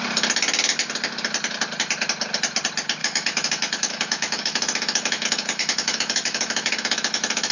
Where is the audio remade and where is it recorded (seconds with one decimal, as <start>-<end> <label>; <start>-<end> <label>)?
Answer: 0.0-3.0 recorded; 3.0-7.5 remade